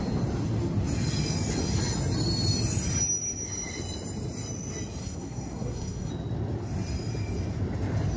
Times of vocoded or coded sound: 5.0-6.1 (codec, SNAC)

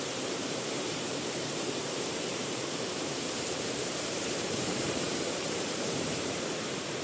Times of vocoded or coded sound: 0.0-7.0 (vocoder, BigVGAN v2)

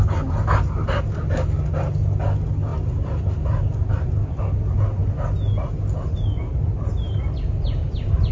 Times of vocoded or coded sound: none

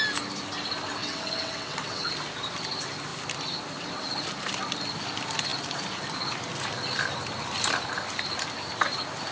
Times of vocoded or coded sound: 1.0-2.1 (vocoder, WaveNeXt)

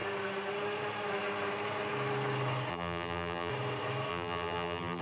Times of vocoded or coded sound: 2.7-3.5 (vocoder, BigVGAN v2); 4.1-5.0